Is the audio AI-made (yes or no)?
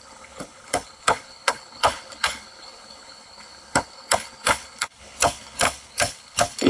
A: yes